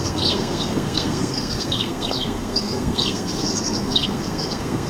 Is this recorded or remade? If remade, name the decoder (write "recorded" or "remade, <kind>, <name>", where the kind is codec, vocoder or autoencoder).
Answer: remade, codec, SNAC